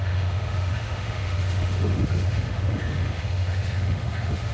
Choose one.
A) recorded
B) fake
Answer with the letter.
B